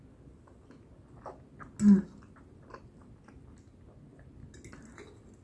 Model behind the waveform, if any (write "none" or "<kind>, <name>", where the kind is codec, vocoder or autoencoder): none